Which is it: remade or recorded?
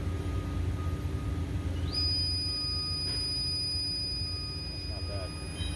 recorded